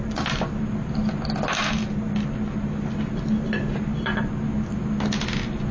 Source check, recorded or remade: recorded